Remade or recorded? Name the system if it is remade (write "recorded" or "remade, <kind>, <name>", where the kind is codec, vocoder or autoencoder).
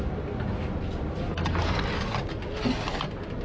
recorded